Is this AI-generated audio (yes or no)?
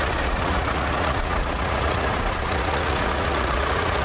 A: yes